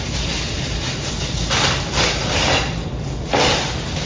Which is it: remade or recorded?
recorded